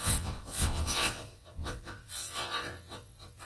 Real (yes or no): no